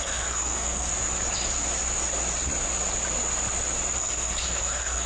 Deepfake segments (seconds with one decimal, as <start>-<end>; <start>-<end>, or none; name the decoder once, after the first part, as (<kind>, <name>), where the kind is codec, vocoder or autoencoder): 0.0-0.9 (codec, SNAC); 4.0-5.1